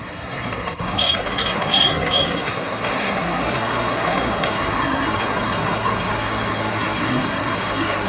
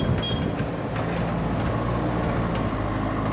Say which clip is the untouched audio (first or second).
second